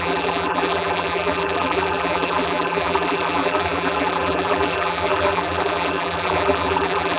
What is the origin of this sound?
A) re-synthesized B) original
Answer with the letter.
A